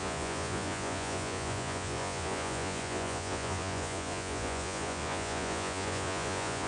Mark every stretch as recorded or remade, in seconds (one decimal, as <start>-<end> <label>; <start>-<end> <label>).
0.0-6.7 remade